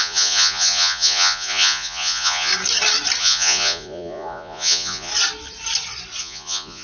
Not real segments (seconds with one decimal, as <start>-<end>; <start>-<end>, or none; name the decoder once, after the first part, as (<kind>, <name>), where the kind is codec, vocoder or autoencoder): 0.0-2.5 (vocoder, Vocos); 3.2-5.1; 6.2-6.8